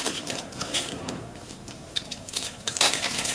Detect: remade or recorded remade